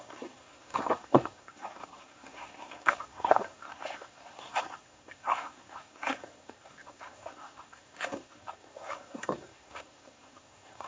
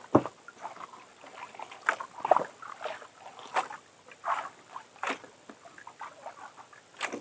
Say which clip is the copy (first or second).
first